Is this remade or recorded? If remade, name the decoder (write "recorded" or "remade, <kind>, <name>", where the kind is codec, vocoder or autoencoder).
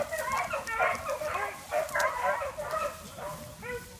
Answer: recorded